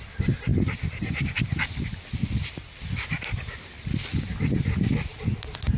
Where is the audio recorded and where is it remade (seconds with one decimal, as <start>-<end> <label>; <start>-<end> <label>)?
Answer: 0.0-5.8 recorded